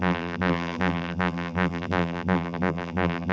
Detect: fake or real fake